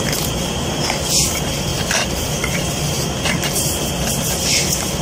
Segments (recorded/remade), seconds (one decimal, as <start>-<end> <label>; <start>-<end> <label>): 0.0-5.0 recorded